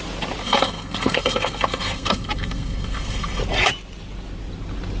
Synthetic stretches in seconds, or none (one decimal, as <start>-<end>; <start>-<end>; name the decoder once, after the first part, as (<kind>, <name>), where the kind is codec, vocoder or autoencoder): 0.4-3.4 (codec, SNAC)